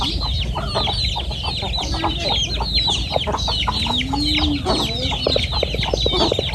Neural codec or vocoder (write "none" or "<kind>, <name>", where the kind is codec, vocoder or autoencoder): none